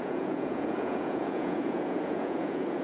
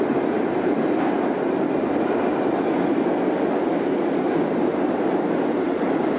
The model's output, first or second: first